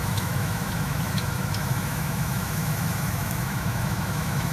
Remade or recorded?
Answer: remade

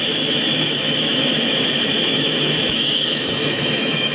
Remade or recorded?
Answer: remade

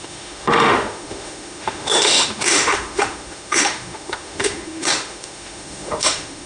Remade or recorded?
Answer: remade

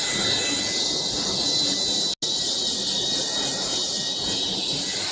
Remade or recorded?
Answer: recorded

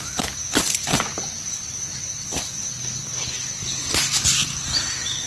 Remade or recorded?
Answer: recorded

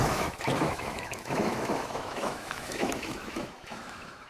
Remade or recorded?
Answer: remade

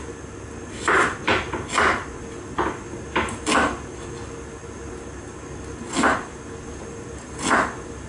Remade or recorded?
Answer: recorded